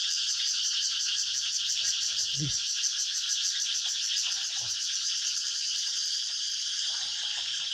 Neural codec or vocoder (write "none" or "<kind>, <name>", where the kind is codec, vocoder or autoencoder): vocoder, BigVGAN v2